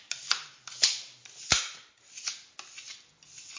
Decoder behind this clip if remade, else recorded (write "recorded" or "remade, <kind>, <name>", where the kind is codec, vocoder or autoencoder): recorded